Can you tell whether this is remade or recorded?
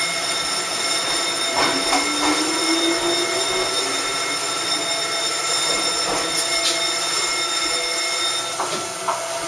recorded